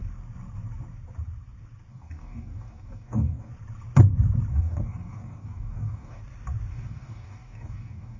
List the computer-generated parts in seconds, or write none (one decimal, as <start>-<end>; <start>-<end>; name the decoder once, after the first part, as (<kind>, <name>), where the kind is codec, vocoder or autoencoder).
1.9-3.5 (codec, DAC); 4.5-6.2; 6.7-8.2